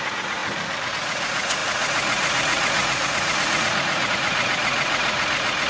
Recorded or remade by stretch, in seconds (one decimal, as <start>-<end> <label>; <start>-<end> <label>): 0.0-0.4 remade; 0.4-0.9 recorded; 0.9-5.7 remade